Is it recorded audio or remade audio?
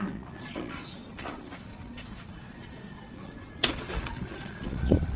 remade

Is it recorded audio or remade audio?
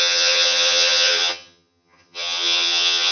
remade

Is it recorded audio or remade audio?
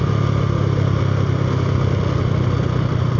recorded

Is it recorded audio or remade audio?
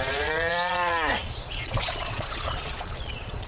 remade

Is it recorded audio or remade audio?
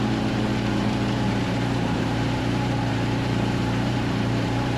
remade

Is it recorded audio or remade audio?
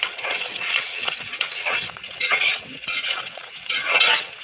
remade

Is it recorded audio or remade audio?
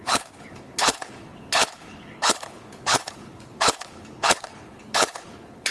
remade